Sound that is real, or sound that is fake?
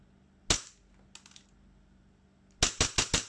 real